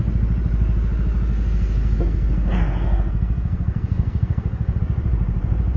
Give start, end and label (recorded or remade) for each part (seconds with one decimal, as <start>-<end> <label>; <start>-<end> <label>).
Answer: 0.0-1.3 recorded; 1.3-4.8 remade; 4.8-5.8 recorded